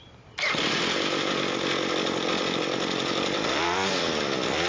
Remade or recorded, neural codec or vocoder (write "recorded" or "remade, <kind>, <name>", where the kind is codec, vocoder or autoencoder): recorded